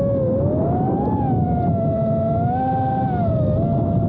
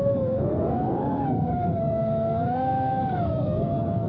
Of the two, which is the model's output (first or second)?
second